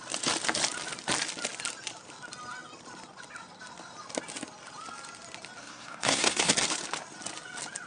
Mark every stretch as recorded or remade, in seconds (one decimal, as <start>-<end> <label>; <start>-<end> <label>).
0.0-5.6 recorded; 5.6-6.5 remade; 6.5-7.9 recorded